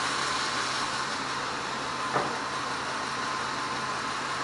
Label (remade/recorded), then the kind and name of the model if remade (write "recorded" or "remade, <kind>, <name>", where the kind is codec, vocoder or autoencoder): recorded